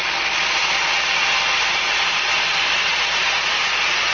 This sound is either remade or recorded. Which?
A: recorded